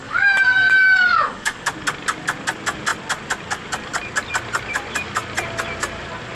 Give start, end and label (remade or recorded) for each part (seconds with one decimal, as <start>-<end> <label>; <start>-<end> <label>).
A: 0.0-1.7 remade; 1.7-6.3 recorded